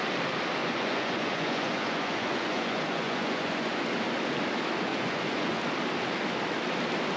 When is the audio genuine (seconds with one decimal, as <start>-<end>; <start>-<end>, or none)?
0.0-0.6; 3.8-4.9; 5.6-7.2